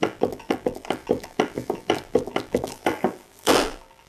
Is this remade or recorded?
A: remade